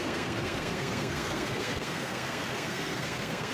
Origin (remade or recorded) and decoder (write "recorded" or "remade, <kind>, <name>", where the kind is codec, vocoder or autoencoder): remade, codec, SNAC